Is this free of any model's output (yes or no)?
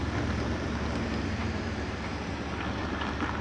yes